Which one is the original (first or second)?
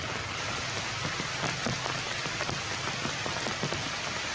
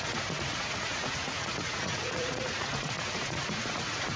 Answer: first